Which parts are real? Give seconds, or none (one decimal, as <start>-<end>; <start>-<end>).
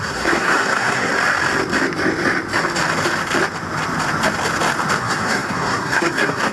1.1-5.0